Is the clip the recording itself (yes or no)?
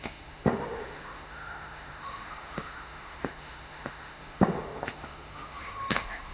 no